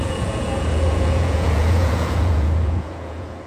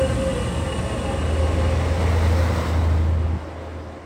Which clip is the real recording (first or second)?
second